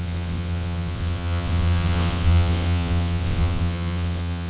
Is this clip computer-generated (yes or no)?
yes